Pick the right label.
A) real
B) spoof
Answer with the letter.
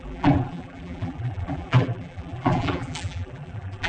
B